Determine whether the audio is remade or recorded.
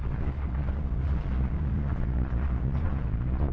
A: remade